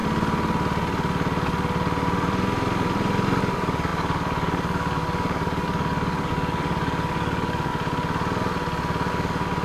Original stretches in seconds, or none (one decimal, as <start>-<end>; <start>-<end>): 0.0-3.4; 7.7-9.1